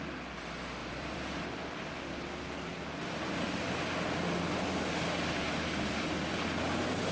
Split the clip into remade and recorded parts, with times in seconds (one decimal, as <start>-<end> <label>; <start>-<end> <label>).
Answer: 0.0-0.8 recorded; 0.8-1.4 remade; 1.4-7.1 recorded